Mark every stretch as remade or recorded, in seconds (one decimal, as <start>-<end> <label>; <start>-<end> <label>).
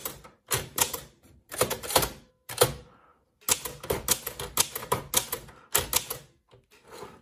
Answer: 0.0-2.3 remade; 2.3-7.2 recorded